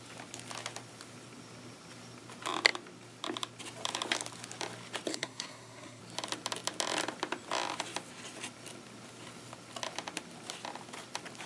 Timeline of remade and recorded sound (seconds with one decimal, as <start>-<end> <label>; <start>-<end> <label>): 0.0-5.1 recorded; 5.1-6.0 remade; 6.0-11.5 recorded